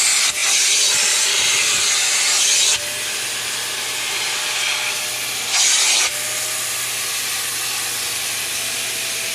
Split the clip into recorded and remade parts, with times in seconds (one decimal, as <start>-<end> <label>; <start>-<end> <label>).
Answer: 0.0-9.3 recorded